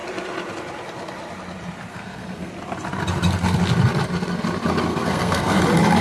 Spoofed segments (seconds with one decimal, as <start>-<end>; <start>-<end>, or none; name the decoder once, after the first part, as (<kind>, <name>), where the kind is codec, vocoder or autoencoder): 1.9-2.5 (codec, SNAC); 4.9-5.6